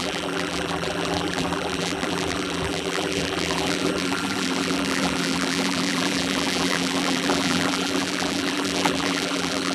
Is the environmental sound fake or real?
fake